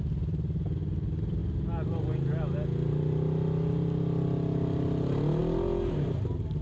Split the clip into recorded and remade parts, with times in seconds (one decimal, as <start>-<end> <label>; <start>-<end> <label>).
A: 0.0-6.6 recorded